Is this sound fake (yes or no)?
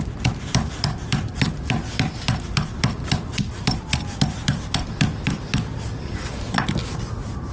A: no